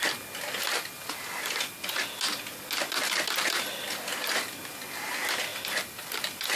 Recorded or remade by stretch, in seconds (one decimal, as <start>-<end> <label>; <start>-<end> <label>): 0.0-5.5 recorded; 5.5-6.6 remade